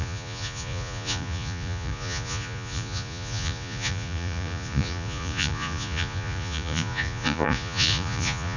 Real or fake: fake